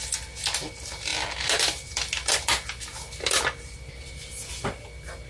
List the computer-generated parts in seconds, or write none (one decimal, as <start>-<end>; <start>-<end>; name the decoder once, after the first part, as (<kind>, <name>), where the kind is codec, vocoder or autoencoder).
none